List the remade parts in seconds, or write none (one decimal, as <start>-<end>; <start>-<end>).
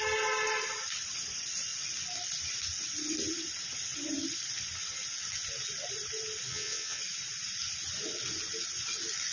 6.5-7.0